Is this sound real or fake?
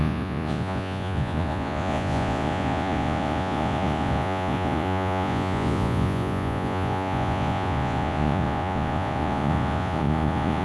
fake